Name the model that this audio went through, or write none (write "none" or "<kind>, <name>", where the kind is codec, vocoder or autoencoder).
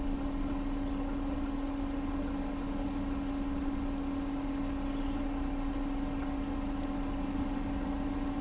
none